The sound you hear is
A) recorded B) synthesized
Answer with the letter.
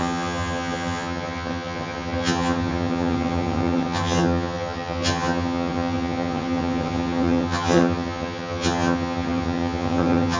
B